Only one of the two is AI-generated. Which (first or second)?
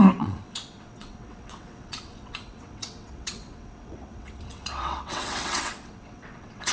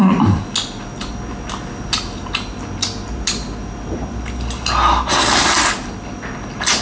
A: first